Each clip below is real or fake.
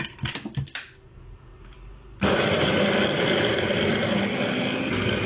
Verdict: real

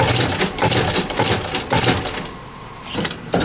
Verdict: real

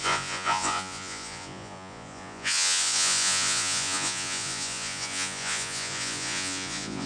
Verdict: fake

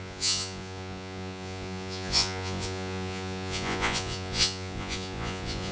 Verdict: fake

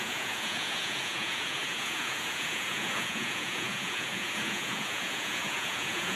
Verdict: fake